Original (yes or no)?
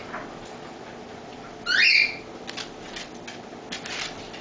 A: yes